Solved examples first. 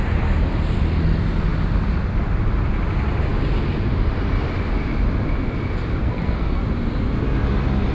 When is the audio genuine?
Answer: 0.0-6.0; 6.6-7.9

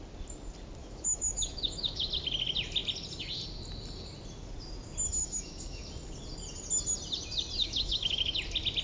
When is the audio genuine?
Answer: 0.0-0.8; 2.1-5.2; 5.8-7.6; 8.4-8.8